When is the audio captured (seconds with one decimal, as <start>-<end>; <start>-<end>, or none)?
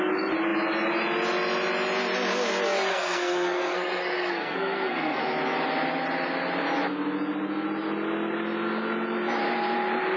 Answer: 0.0-2.9; 5.2-10.2